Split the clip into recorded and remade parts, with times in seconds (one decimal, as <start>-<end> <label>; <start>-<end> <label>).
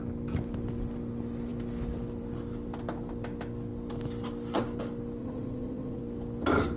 0.0-5.2 recorded; 5.2-6.0 remade; 6.0-6.8 recorded